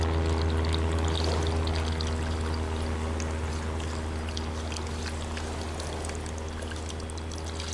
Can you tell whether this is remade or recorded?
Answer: recorded